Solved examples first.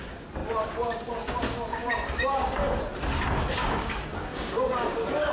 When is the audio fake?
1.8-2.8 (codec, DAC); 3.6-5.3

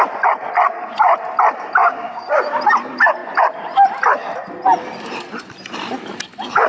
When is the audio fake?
1.8-2.4 (codec, DAC)

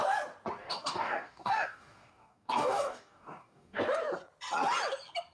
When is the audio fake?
0.6-3.8 (codec, DAC)